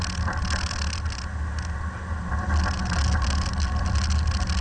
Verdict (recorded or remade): recorded